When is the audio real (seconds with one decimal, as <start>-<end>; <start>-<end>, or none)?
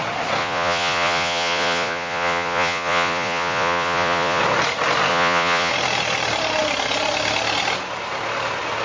0.0-0.4; 4.4-5.1; 5.7-8.8